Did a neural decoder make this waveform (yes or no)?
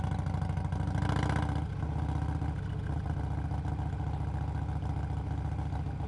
no